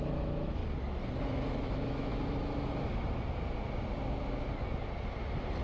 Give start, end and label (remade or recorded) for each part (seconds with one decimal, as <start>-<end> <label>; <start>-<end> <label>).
0.0-0.6 remade; 0.6-1.2 recorded; 1.2-2.1 remade; 2.1-5.6 recorded